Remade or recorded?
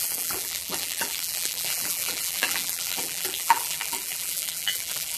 remade